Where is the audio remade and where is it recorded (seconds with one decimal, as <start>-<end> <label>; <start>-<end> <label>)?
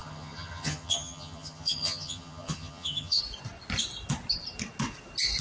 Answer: 0.0-3.2 remade; 3.2-5.4 recorded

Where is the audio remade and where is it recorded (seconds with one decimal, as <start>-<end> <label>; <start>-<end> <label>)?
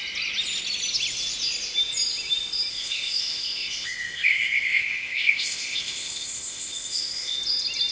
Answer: 0.0-2.7 recorded; 2.7-7.4 remade; 7.4-7.9 recorded